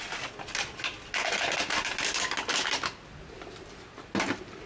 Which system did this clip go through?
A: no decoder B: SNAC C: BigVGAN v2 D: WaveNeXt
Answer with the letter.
A